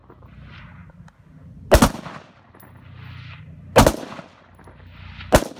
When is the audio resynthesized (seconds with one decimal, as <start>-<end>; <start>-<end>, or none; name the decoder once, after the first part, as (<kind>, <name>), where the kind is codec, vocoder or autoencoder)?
none